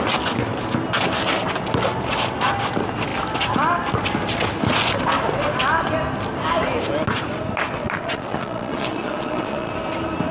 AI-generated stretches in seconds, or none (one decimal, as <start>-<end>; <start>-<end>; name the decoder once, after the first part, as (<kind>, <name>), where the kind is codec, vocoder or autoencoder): 7.8-9.7 (vocoder, Vocos)